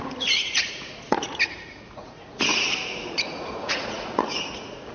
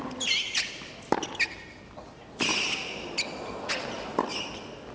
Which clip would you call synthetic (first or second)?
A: first